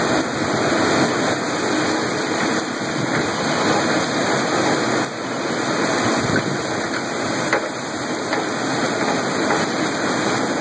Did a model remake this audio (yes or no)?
no